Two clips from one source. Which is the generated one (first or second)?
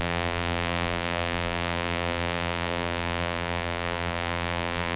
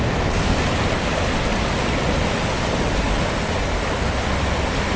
first